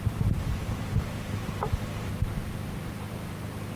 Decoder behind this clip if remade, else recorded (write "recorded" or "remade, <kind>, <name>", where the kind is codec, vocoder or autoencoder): remade, vocoder, BigVGAN v2